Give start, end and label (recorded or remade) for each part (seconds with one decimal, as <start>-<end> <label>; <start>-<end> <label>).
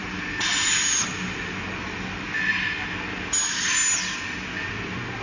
0.0-5.2 recorded